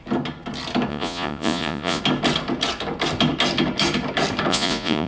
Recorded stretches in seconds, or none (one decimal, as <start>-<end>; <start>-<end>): 0.0-0.9; 2.0-4.5